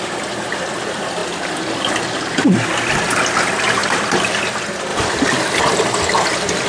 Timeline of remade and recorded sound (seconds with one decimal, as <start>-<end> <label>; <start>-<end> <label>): 0.0-6.7 recorded